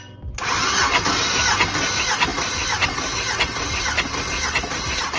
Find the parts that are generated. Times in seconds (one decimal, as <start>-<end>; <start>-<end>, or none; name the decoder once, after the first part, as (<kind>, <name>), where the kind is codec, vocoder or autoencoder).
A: none